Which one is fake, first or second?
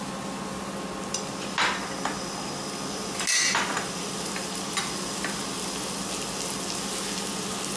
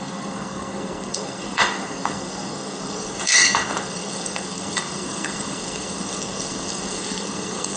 second